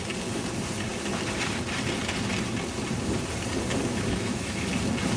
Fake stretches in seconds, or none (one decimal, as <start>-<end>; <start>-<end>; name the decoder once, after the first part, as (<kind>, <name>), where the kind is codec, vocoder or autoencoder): 3.9-4.7 (autoencoder, DAC-VAE)